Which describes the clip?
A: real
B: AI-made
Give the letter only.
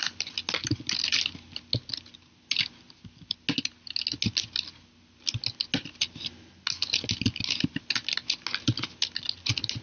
A